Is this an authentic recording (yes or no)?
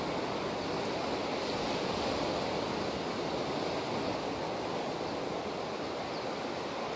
yes